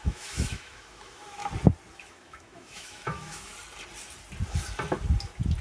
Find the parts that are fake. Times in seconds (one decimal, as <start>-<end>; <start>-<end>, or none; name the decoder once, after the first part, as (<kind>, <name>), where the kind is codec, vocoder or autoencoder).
0.0-1.4 (autoencoder, DAC-VAE); 1.9-3.5